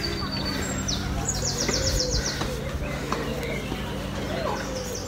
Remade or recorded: recorded